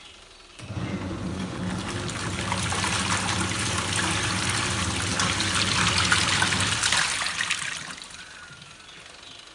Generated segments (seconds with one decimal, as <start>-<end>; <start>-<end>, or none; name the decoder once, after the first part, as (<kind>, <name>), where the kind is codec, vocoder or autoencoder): 0.5-1.6 (vocoder, Vocos)

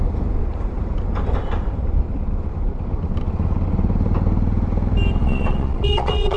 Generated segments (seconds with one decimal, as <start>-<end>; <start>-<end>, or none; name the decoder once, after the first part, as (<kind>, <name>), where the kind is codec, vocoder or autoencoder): 5.2-6.4 (vocoder, Vocos)

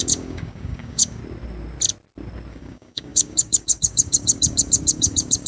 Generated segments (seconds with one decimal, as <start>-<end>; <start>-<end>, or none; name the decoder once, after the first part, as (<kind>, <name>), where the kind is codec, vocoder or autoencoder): 0.0-1.2 (codec, DAC); 2.5-5.5

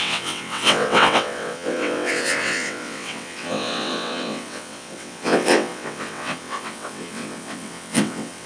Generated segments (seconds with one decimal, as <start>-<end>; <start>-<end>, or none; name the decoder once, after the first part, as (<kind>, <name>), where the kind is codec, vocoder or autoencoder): 0.0-8.5 (vocoder, WaveNeXt)